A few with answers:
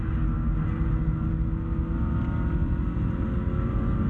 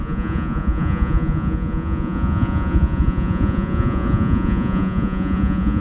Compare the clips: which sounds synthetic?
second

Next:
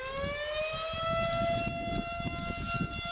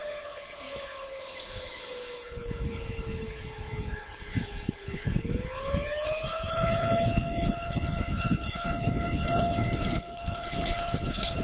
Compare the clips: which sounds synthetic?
second